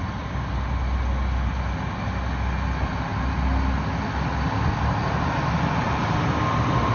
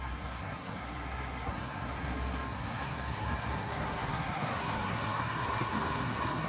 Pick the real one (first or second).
first